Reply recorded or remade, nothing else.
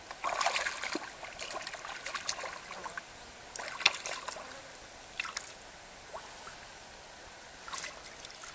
recorded